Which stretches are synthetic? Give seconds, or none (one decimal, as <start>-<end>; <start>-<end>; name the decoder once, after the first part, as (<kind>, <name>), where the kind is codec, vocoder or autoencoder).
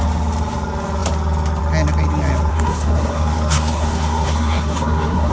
2.5-5.3 (codec, SNAC)